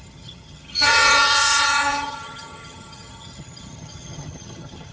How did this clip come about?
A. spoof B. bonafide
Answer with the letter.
A